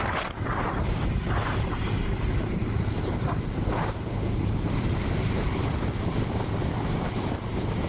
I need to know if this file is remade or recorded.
remade